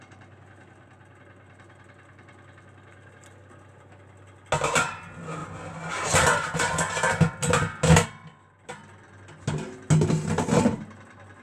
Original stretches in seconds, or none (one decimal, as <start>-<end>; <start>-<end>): 0.0-11.4